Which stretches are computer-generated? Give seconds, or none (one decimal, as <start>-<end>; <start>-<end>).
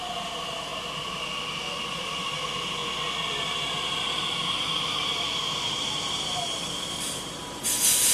0.0-0.7; 1.9-2.8; 3.3-8.1